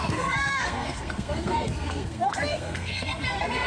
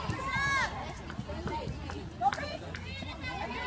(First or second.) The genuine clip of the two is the second